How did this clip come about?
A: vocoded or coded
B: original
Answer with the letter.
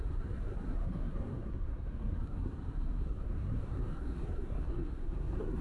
A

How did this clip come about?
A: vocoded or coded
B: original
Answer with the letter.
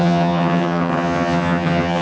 A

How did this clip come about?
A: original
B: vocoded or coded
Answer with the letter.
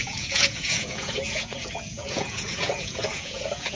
B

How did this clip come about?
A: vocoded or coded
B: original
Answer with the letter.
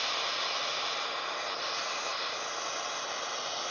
B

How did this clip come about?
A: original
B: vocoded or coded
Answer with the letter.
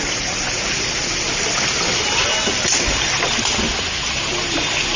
A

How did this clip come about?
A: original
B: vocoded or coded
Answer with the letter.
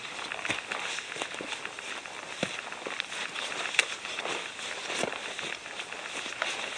A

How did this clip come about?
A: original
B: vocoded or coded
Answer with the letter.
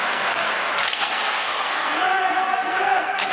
B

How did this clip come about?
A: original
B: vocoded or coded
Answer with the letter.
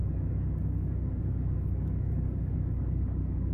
B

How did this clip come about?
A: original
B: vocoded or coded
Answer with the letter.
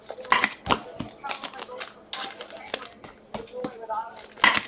A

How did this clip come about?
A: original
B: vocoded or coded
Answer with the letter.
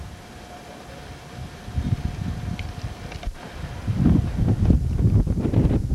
B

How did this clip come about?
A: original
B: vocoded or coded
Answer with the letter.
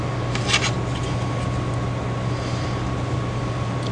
A